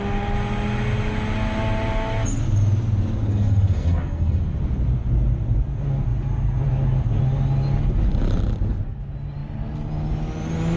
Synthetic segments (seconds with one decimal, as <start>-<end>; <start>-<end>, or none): 3.3-4.4